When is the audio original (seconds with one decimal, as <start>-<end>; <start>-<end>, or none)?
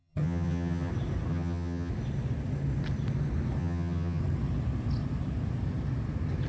0.9-1.3; 1.9-3.6; 4.2-6.5